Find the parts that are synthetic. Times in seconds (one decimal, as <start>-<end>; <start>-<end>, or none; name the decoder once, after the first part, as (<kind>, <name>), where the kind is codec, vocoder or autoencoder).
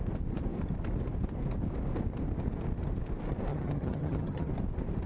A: 3.5-4.5 (vocoder, HiFi-GAN)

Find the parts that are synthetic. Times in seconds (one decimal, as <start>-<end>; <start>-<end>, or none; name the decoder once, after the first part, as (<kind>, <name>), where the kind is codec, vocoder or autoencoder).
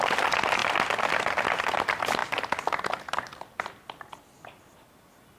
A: none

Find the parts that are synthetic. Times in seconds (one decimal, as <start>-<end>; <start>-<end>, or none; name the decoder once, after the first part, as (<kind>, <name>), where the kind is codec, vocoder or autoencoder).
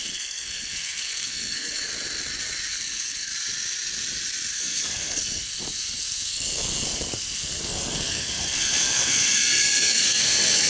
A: 0.0-1.9 (codec, SNAC); 2.7-3.3; 4.5-10.7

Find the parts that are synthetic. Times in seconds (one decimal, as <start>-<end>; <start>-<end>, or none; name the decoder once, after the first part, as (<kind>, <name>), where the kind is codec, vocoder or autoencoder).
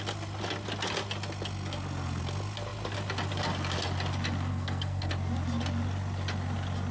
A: 4.5-5.1 (codec, SNAC)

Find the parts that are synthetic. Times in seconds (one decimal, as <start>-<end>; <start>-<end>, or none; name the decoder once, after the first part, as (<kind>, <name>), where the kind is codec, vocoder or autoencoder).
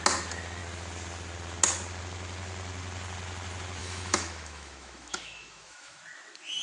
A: 3.8-6.0 (autoencoder, DAC-VAE)